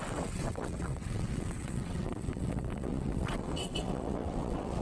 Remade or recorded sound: remade